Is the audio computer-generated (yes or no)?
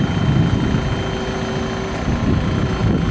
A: no